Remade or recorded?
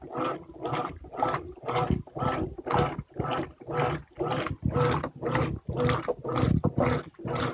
recorded